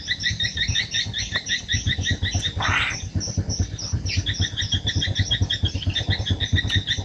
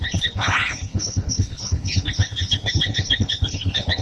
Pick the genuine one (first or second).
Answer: first